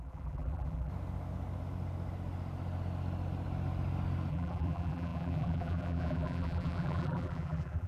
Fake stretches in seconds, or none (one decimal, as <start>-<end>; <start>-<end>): 0.0-0.9; 4.3-7.9